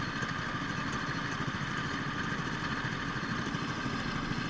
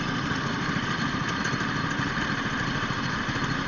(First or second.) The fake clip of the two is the second